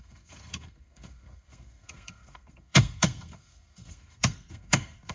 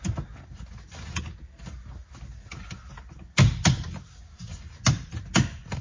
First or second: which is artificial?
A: first